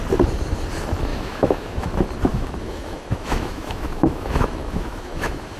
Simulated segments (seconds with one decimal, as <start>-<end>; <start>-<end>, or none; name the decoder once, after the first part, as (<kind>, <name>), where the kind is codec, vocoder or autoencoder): 1.1-1.9 (autoencoder, DAC-VAE); 2.3-5.6